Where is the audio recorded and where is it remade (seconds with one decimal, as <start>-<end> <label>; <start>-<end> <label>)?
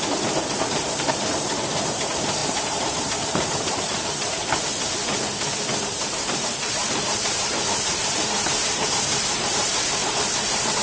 0.0-4.4 remade; 4.4-5.8 recorded; 5.8-10.8 remade